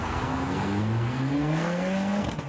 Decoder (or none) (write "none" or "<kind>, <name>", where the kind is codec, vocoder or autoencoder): codec, SNAC